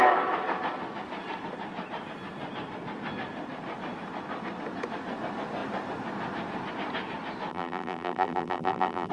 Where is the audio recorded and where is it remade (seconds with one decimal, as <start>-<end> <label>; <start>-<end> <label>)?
0.0-7.5 recorded; 7.5-9.1 remade